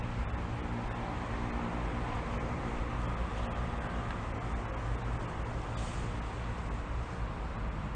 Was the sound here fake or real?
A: real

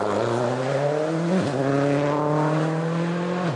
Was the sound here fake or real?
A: real